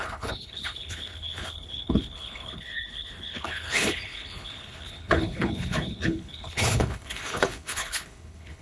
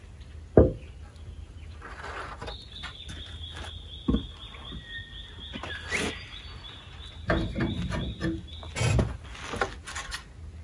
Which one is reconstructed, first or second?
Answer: first